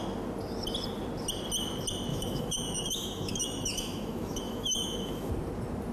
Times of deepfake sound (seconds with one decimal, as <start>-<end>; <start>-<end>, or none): 2.1-5.3